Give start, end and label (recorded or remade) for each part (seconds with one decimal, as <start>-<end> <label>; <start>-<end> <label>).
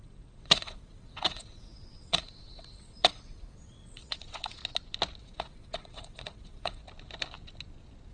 0.0-4.6 remade; 4.6-5.2 recorded; 5.2-6.8 remade; 6.8-8.1 recorded